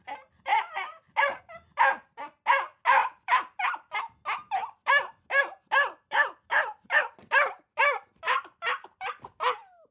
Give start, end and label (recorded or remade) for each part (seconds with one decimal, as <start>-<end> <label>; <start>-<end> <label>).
0.0-0.5 recorded; 0.5-1.4 remade; 1.4-9.9 recorded